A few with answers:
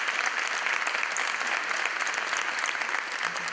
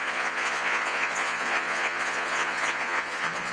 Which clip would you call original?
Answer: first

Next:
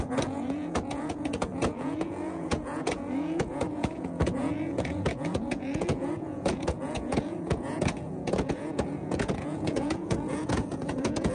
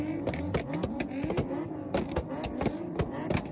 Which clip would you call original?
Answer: second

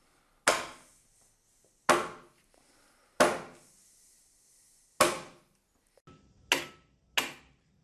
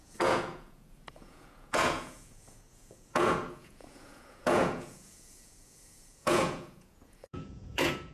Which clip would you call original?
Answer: first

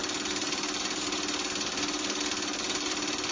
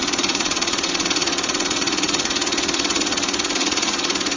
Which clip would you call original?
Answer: first